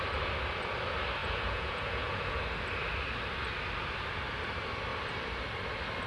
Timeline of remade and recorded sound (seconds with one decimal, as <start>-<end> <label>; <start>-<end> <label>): 0.0-1.2 recorded; 1.2-2.4 remade; 2.4-6.1 recorded